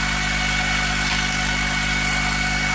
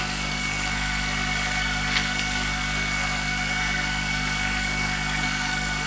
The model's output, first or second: second